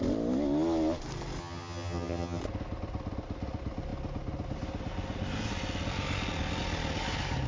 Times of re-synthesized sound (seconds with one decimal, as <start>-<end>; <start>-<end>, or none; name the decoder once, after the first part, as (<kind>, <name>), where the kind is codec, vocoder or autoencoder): 1.4-2.4 (vocoder, HiFi-GAN)